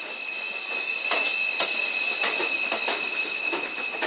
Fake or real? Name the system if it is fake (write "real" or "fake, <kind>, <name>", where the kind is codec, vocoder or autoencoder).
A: real